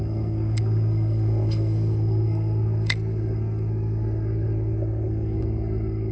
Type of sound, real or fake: fake